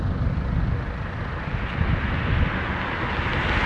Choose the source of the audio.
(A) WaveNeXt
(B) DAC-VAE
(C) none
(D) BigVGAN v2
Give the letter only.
C